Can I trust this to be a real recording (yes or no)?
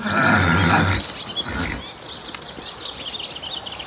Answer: yes